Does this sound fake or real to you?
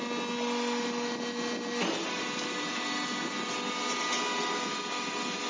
real